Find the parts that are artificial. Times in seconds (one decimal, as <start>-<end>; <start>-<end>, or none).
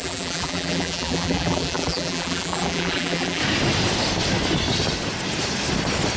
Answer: 0.0-3.4